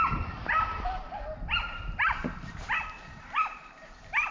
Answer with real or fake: real